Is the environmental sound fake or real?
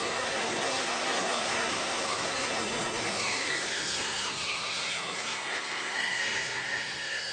fake